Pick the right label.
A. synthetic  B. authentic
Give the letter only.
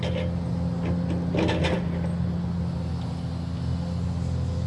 B